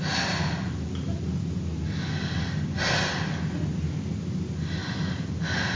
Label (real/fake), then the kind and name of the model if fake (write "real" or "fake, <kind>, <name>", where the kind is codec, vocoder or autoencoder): real